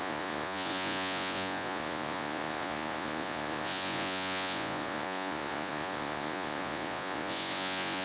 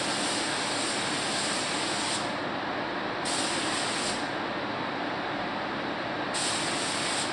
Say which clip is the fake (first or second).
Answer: first